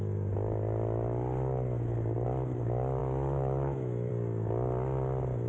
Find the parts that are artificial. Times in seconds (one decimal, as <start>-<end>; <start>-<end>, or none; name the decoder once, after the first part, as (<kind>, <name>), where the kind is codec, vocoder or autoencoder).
3.0-4.1 (autoencoder, DAC-VAE)